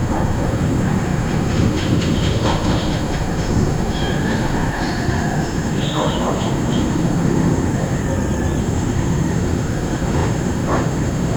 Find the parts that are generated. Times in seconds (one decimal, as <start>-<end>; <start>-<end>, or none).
0.0-8.0; 8.6-11.4